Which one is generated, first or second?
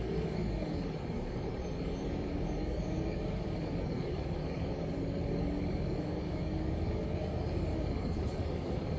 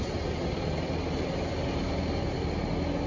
first